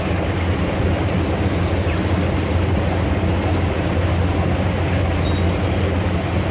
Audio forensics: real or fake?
real